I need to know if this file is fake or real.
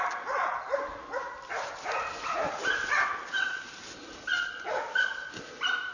real